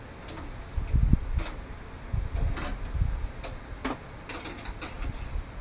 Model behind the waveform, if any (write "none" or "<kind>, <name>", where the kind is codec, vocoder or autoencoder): none